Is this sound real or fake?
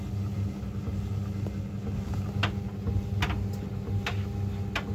real